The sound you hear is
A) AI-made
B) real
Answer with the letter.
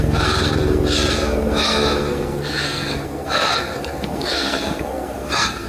A